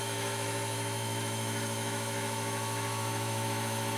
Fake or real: fake